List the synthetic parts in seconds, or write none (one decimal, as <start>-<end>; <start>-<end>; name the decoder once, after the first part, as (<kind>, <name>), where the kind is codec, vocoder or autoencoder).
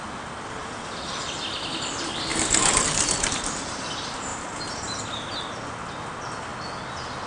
0.6-1.4 (vocoder, BigVGAN v2); 2.3-3.9; 4.3-5.0